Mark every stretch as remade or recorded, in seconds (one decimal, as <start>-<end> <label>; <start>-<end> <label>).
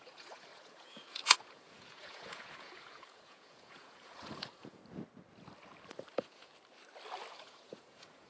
0.0-4.8 remade; 4.8-6.1 recorded; 6.1-6.5 remade; 6.5-7.3 recorded; 7.3-8.3 remade